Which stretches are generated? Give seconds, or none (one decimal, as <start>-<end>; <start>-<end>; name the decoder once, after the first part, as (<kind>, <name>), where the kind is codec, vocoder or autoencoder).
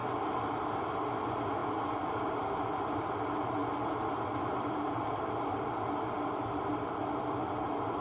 none